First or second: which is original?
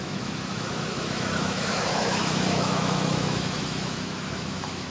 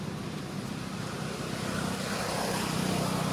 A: second